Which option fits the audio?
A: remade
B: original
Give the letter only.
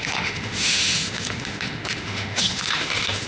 A